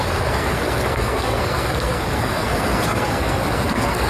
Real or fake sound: fake